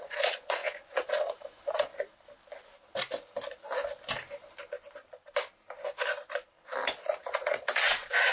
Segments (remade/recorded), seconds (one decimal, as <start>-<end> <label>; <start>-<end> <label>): 0.0-1.9 remade; 1.9-6.9 recorded; 6.9-8.3 remade